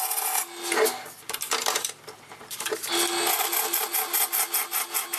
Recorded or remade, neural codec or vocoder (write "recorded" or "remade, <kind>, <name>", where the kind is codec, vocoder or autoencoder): recorded